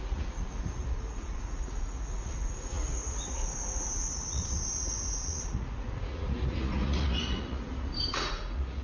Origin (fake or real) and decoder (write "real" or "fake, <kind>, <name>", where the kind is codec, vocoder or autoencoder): fake, vocoder, Vocos